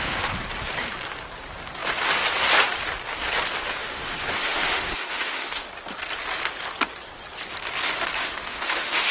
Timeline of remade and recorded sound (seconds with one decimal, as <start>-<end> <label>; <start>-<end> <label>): 0.0-3.8 recorded; 3.8-5.7 remade; 5.7-8.2 recorded; 8.2-9.1 remade